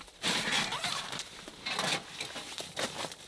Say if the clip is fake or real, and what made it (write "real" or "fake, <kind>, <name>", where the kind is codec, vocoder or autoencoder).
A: real